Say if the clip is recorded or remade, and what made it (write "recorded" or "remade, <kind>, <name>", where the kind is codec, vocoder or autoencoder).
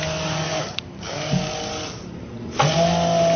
recorded